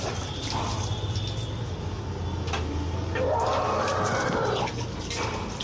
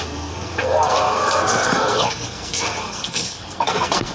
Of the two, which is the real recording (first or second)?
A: first